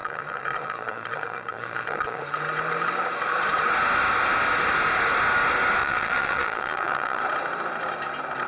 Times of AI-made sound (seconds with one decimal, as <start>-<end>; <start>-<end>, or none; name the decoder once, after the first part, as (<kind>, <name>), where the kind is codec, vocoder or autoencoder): 0.0-2.2 (vocoder, Vocos); 5.8-7.2